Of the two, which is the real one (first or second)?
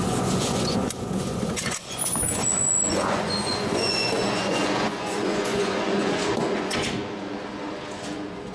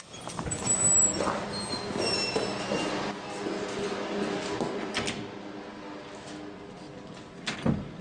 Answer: second